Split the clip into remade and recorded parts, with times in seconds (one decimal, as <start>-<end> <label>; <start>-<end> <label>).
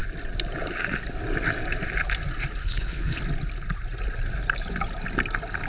0.0-2.6 recorded; 2.6-3.2 remade; 3.2-5.7 recorded